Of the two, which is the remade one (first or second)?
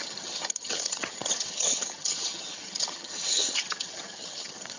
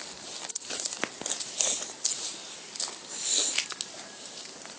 first